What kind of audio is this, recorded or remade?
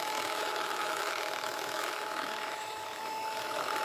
remade